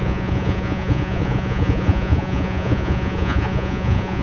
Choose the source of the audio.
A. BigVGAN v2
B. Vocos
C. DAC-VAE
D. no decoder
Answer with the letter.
B